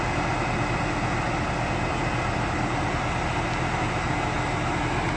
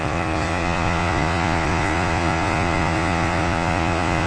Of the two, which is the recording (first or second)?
first